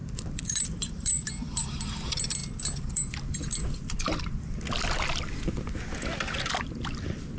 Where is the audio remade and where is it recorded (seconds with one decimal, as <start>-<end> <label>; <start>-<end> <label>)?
0.0-1.7 remade; 1.7-2.4 recorded; 2.4-4.2 remade; 4.2-7.4 recorded